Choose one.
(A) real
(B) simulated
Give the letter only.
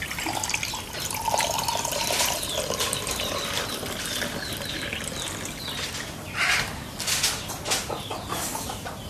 A